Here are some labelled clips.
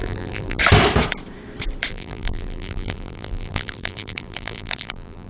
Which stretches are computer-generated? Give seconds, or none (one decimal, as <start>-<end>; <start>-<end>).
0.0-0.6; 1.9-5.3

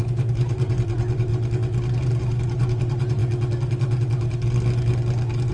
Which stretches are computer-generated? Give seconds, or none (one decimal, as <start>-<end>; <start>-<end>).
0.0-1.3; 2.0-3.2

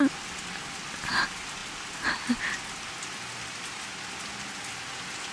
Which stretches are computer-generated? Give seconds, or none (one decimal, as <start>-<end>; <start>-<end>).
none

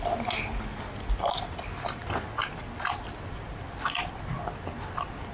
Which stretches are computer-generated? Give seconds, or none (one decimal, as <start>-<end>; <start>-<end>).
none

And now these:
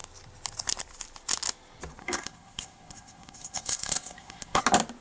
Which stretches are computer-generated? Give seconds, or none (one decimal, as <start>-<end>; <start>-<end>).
2.0-4.6

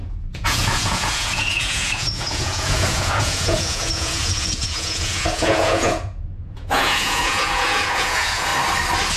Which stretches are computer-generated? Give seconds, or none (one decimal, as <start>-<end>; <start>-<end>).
0.0-8.5